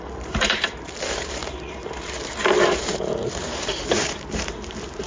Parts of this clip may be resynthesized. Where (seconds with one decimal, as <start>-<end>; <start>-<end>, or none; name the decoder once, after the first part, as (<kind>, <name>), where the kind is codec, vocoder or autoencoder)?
0.0-5.1 (vocoder, BigVGAN v2)